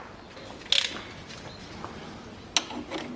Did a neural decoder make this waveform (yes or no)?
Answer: no